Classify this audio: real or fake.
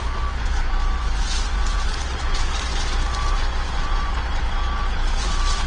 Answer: fake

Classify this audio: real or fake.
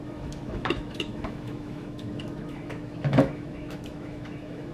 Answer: fake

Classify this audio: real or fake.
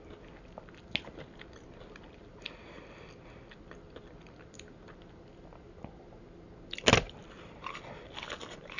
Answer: real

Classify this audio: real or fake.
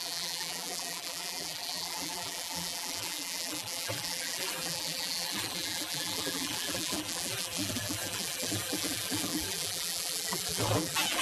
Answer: fake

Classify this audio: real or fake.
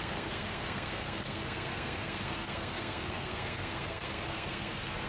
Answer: fake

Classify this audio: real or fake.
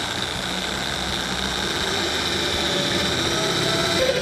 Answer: real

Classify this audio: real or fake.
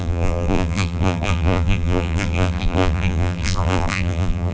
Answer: fake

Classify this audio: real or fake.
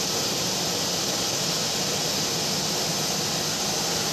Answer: real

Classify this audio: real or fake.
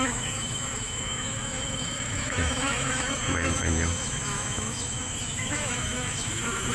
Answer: fake